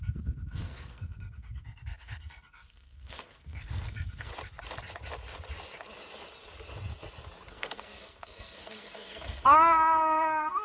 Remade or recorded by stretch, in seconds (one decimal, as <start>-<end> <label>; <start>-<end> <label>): 0.0-4.3 remade; 4.3-7.5 recorded; 7.5-10.6 remade

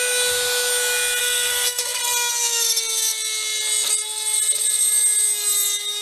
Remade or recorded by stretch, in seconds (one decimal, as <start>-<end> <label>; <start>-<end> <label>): 0.0-1.2 recorded; 1.2-2.0 remade; 2.0-6.0 recorded

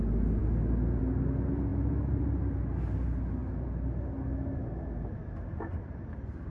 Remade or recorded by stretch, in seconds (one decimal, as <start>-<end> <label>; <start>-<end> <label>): 0.0-6.5 recorded

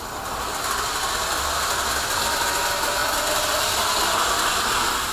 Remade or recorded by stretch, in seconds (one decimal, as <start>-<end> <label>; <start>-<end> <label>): 0.0-5.1 recorded

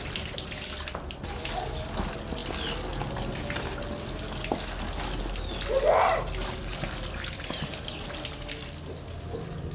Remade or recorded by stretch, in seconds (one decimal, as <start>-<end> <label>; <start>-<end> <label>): 0.0-9.7 recorded

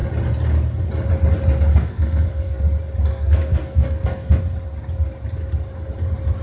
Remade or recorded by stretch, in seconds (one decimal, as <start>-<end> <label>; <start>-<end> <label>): 0.0-1.7 recorded; 1.7-2.6 remade; 2.6-3.1 recorded; 3.1-4.4 remade; 4.4-6.4 recorded

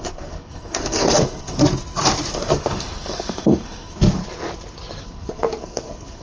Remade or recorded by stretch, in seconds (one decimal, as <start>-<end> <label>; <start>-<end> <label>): 0.0-1.6 remade; 1.6-2.3 recorded; 2.3-4.2 remade; 4.2-5.0 recorded; 5.0-6.2 remade

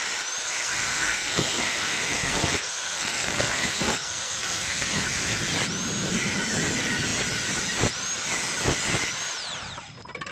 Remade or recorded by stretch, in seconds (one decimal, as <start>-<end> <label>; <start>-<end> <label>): 0.0-0.4 recorded; 0.4-5.4 remade; 5.4-10.3 recorded